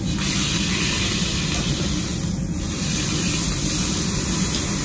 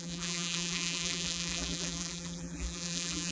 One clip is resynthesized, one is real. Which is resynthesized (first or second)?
second